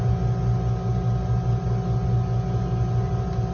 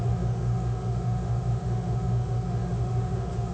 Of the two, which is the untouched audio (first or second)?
first